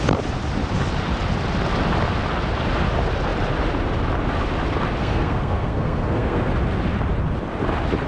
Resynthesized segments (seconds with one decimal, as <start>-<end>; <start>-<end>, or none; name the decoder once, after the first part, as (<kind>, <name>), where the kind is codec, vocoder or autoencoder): 5.0-6.5 (codec, SNAC)